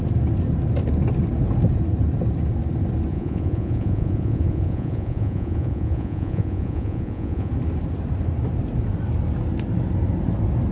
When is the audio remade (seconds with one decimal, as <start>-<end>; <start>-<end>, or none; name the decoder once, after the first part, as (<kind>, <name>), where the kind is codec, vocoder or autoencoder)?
3.1-7.5 (vocoder, Vocos)